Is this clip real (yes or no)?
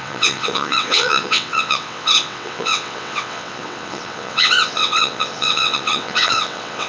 no